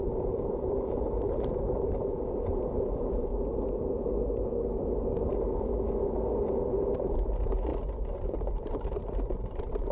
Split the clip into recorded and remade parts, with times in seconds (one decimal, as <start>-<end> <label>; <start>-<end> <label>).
0.0-3.3 remade; 3.3-6.5 recorded; 6.5-7.7 remade; 7.7-8.5 recorded; 8.5-9.9 remade